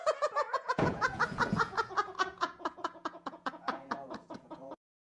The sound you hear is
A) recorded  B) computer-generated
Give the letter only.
B